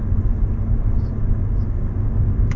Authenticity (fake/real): real